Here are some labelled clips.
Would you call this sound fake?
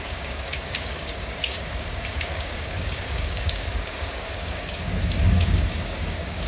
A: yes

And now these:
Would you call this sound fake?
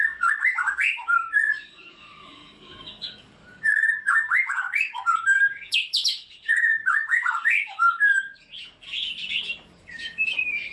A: yes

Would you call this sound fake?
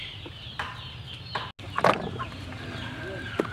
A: no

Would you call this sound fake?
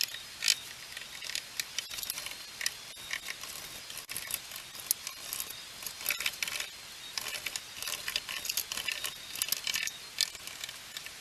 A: no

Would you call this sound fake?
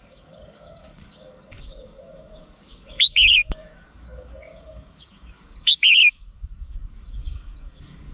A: yes